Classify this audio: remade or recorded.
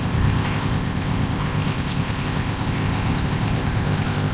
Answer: remade